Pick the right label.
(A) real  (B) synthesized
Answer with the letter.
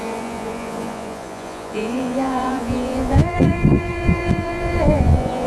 B